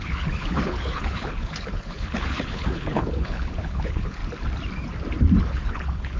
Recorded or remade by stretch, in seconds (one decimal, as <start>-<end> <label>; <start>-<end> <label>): 0.0-4.2 remade; 4.2-5.5 recorded; 5.5-6.2 remade